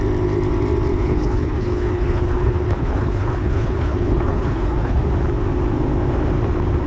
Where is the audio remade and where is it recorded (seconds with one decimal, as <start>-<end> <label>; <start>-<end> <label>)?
0.0-0.9 recorded; 0.9-5.0 remade; 5.0-6.9 recorded